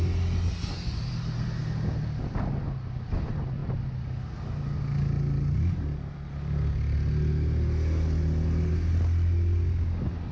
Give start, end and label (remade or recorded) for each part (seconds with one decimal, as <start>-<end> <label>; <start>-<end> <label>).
0.0-10.3 recorded